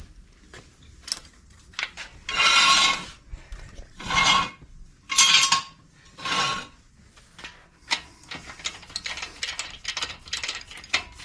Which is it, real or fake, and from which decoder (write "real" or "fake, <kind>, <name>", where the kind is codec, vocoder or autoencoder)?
real